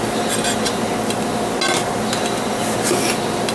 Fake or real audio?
real